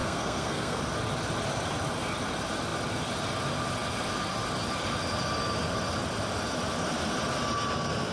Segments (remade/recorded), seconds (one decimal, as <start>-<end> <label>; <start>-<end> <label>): 0.0-0.8 remade; 0.8-8.1 recorded